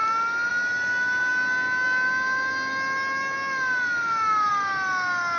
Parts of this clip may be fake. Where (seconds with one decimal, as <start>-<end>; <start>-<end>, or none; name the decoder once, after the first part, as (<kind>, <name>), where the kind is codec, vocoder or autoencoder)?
none